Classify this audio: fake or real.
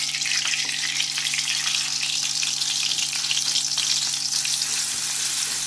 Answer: real